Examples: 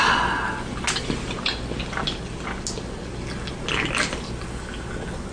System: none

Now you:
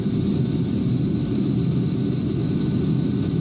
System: none